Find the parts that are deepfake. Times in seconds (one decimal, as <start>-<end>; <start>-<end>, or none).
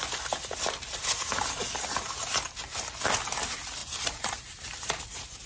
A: 3.8-5.5